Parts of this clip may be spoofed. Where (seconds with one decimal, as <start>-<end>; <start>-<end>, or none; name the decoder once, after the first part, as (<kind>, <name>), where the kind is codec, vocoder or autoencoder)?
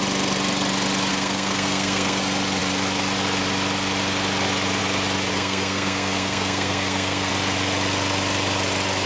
1.1-2.2 (codec, SNAC); 5.3-7.3